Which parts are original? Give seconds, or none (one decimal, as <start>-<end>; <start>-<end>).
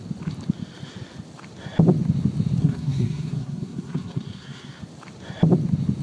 0.0-2.6; 4.8-6.0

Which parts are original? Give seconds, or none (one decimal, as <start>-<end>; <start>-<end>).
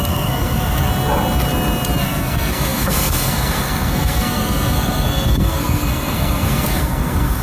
0.9-2.0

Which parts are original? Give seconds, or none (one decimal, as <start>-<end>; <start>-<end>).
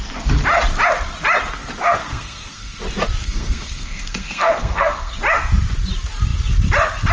0.0-2.0; 2.8-3.2; 5.1-7.1